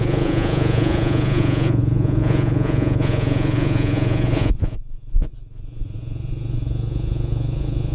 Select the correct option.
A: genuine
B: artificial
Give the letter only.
B